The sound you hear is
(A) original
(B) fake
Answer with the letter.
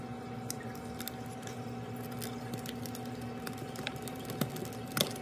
A